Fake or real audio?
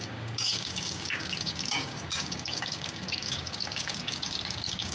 fake